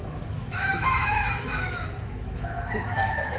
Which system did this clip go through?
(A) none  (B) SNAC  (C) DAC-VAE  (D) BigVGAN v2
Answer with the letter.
C